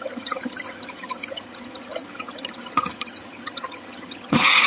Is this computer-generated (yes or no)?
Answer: yes